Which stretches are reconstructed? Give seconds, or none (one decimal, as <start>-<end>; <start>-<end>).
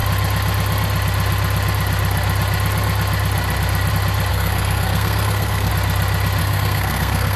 4.3-5.7; 6.4-7.4